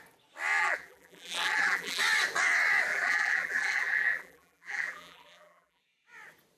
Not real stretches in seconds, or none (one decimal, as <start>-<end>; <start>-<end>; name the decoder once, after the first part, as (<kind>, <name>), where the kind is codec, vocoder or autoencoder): 0.6-2.0 (vocoder, BigVGAN v2); 2.9-5.8